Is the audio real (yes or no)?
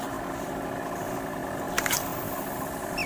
yes